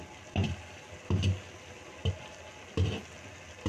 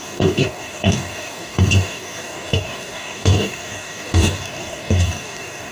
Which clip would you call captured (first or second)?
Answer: first